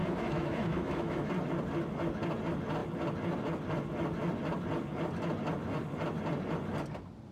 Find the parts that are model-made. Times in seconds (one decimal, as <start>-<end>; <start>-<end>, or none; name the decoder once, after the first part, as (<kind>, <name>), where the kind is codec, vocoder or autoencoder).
0.0-1.3 (autoencoder, DAC-VAE)